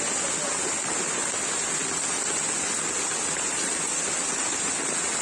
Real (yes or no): yes